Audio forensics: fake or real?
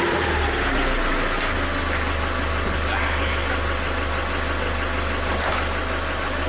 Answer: real